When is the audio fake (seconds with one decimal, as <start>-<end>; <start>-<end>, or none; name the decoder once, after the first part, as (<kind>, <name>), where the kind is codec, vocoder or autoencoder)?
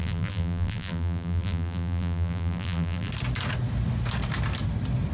0.0-3.1 (vocoder, BigVGAN v2)